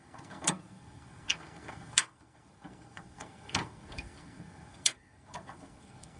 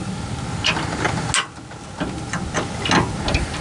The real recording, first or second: second